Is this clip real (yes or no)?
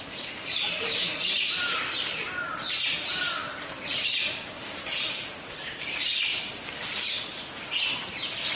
no